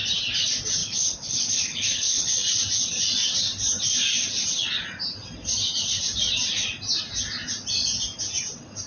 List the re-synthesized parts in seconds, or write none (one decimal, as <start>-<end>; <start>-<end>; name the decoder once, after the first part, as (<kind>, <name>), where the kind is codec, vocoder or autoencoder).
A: 0.8-2.3 (codec, HILCodec)